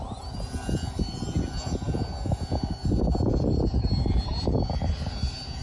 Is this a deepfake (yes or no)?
no